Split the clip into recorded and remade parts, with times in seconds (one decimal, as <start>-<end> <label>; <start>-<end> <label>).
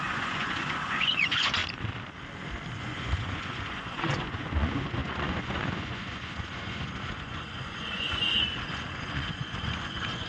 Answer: 0.0-1.6 remade; 1.6-2.8 recorded; 2.8-10.3 remade